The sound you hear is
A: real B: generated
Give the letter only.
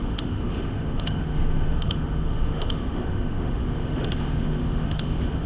B